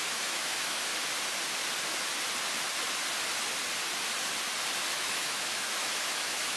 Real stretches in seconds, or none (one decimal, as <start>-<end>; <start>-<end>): 0.9-4.9